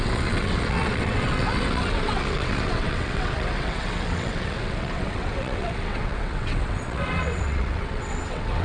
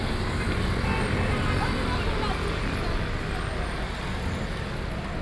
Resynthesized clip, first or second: first